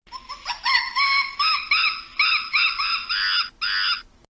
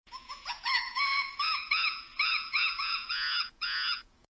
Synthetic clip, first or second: second